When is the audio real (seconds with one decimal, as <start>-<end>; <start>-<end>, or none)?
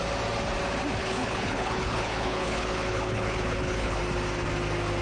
0.0-1.0; 4.0-5.0